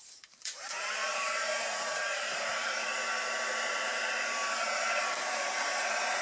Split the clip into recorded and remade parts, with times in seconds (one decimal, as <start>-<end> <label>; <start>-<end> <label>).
0.0-2.9 remade; 2.9-3.7 recorded; 3.7-4.4 remade; 4.4-5.0 recorded; 5.0-6.2 remade